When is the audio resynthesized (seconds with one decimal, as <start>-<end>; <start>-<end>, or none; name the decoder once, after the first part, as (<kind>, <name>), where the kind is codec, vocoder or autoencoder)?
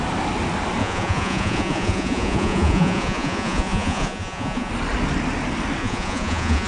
0.8-4.7 (vocoder, Vocos); 5.8-6.7